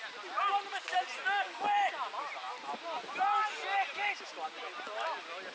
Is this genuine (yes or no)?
yes